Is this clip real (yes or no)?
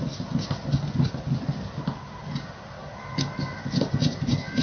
yes